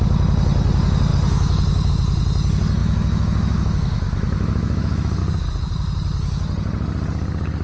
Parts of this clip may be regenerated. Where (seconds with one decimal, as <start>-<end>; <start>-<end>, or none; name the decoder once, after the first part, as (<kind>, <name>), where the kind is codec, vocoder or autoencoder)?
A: 2.8-5.2 (autoencoder, DAC-VAE)